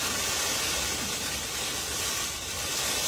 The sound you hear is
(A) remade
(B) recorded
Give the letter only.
B